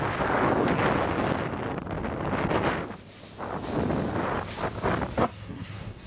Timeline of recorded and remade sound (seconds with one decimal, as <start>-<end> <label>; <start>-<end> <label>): 0.0-5.2 recorded; 5.2-6.1 remade